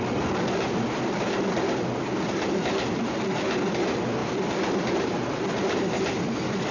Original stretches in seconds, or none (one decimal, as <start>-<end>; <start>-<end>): 0.0-4.2; 5.4-6.7